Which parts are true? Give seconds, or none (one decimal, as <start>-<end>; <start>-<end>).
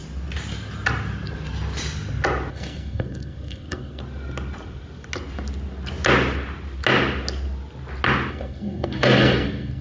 0.0-2.5; 4.0-8.3